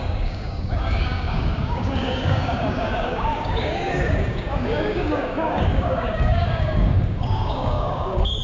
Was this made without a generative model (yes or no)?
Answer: no